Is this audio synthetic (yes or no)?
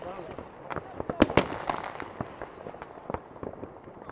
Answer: no